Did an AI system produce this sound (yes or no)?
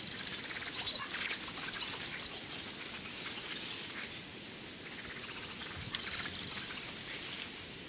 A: no